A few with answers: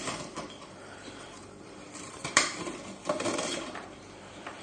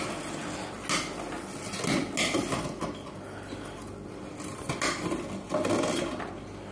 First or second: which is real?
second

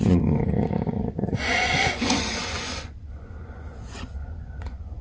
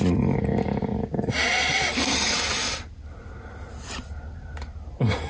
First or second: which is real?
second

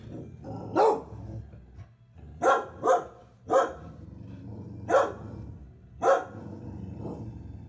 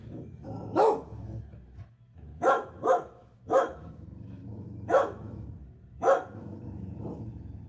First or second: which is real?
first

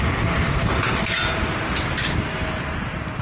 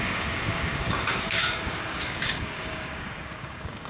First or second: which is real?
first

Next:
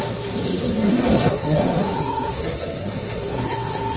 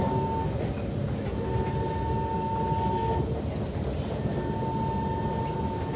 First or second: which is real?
second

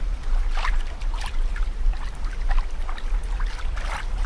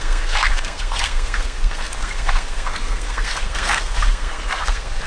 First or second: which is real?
first